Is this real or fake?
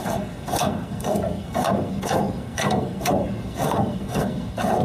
fake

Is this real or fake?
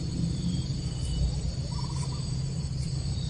fake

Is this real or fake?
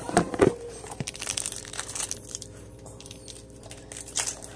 fake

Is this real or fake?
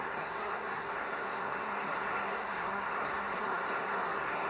fake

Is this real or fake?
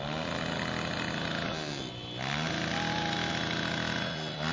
real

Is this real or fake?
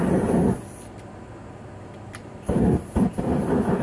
real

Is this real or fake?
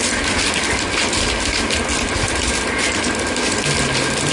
real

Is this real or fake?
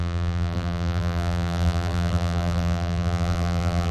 fake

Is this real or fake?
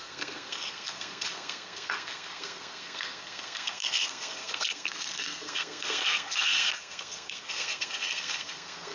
fake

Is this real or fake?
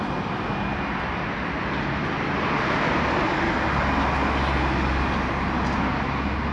real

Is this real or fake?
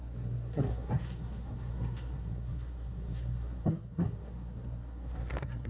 fake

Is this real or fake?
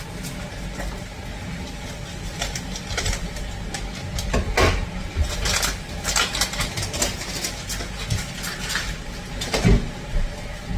real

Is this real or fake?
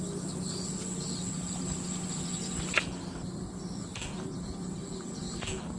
real